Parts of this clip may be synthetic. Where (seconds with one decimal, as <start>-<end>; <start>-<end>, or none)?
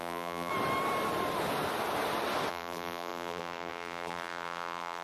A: 0.0-0.5; 2.5-5.0